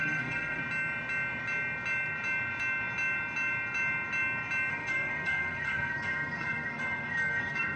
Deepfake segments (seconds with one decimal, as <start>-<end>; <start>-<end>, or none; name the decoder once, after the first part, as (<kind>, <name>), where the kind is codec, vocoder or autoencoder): 0.0-0.6 (codec, SNAC); 4.7-7.8